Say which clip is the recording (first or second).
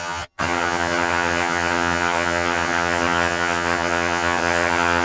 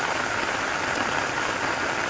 second